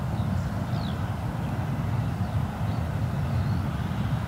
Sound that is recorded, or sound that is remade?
recorded